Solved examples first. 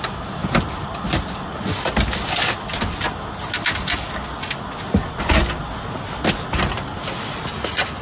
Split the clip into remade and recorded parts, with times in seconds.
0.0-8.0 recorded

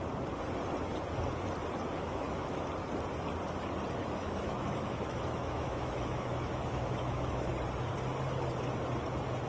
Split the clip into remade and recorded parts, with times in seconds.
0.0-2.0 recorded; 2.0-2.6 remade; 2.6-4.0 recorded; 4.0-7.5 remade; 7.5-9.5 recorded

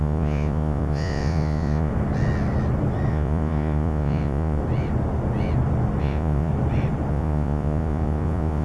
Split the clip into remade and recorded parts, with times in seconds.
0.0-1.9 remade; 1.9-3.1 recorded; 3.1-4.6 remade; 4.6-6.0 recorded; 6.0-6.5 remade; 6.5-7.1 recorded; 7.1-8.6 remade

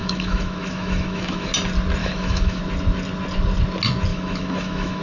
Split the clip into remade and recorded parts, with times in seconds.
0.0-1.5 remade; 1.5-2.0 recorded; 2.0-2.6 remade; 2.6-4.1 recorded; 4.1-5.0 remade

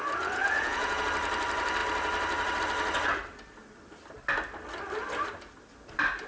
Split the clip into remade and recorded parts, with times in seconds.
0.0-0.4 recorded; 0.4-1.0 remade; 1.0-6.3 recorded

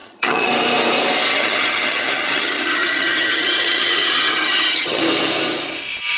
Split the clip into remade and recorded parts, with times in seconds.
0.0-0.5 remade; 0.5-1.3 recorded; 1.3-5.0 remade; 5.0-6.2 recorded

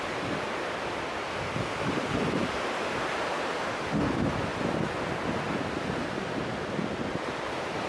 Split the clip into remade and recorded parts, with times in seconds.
0.0-7.9 recorded

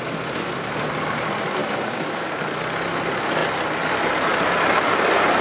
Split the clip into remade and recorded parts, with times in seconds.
0.0-1.6 recorded; 1.6-2.4 remade; 2.4-5.4 recorded